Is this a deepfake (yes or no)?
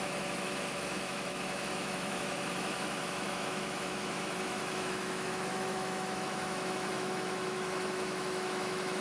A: yes